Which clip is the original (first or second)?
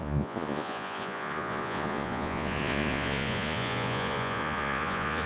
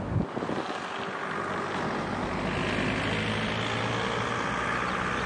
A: second